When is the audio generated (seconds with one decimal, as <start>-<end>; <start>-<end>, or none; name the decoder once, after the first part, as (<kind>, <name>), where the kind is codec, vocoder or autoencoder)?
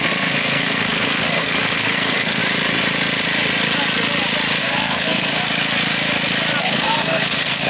0.0-2.4 (codec, SNAC); 4.6-5.4; 6.6-7.7